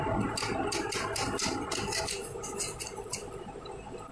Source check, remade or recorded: recorded